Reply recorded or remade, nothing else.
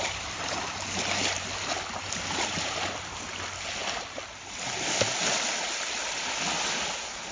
recorded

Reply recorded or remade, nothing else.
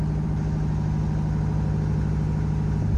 recorded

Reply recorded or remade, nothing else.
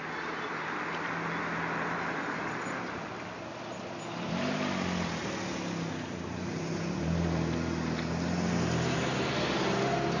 recorded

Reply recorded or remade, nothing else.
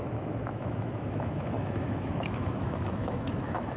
remade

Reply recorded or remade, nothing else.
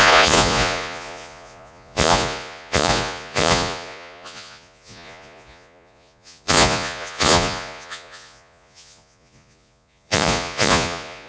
remade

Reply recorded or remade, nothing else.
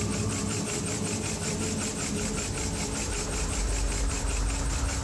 recorded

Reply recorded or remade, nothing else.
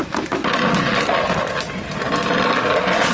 recorded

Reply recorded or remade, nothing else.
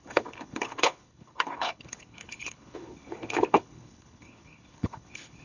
remade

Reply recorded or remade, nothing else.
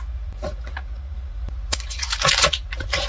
remade